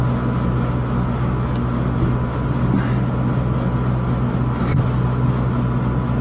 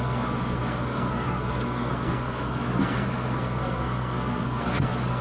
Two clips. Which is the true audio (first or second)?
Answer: first